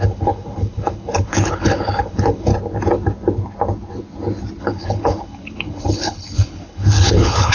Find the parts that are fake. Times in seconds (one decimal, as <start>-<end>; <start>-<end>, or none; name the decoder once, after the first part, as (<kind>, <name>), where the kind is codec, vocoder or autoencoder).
0.0-2.5 (codec, HILCodec); 4.6-7.5

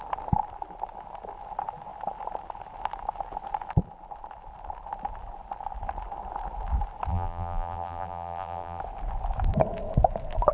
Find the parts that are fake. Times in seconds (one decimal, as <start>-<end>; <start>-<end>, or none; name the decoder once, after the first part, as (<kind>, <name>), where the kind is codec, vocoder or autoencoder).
7.1-8.8 (vocoder, BigVGAN v2)

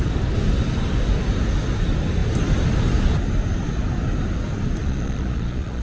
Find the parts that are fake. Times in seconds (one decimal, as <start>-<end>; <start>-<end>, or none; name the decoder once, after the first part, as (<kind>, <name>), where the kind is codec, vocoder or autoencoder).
4.8-5.8 (vocoder, Vocos)

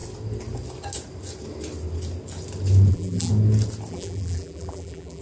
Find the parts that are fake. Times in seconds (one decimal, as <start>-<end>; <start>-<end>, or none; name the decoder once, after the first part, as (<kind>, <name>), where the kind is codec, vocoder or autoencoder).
2.9-3.3 (vocoder, BigVGAN v2); 3.9-5.2

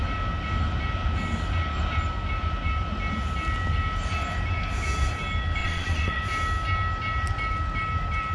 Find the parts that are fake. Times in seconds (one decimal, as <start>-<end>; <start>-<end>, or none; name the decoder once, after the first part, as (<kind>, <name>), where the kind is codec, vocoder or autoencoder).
5.6-6.2 (vocoder, Vocos)

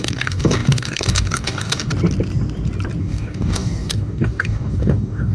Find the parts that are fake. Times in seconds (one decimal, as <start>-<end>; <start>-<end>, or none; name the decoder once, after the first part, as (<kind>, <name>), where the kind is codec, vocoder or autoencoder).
0.0-1.9 (codec, DAC); 3.0-5.3

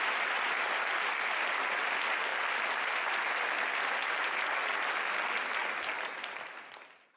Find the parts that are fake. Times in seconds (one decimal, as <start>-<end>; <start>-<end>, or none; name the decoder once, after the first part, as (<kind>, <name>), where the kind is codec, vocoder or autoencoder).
none